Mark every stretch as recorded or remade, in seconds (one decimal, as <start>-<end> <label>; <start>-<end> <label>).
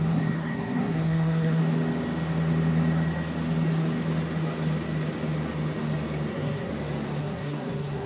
0.0-1.6 remade; 1.6-6.3 recorded; 6.3-6.7 remade; 6.7-7.2 recorded; 7.2-8.1 remade